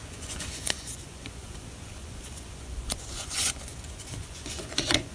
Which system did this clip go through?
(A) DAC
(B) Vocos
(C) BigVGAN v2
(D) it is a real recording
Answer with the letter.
B